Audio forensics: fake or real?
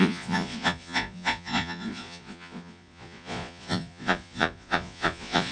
fake